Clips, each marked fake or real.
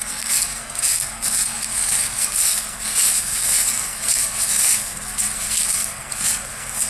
fake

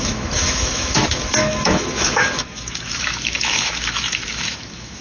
fake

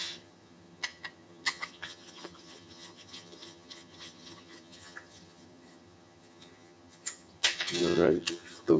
fake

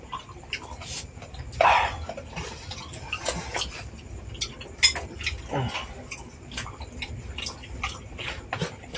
real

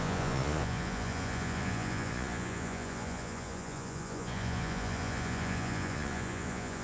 fake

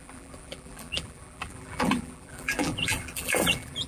fake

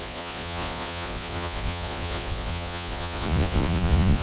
fake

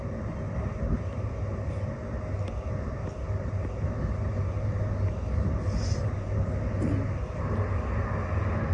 real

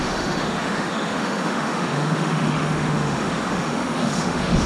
fake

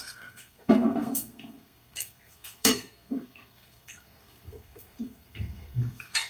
fake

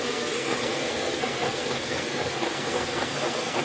fake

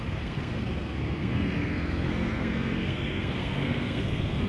fake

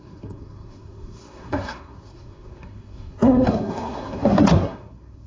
fake